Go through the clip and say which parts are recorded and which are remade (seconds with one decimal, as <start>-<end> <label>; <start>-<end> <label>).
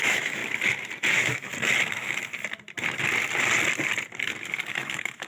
0.0-0.4 remade; 0.4-1.1 recorded; 1.1-1.5 remade; 1.5-4.7 recorded; 4.7-5.3 remade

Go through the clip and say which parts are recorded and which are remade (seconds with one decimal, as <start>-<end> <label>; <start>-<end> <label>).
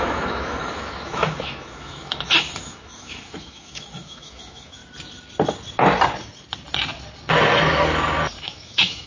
0.0-4.8 remade; 4.8-8.4 recorded; 8.4-9.1 remade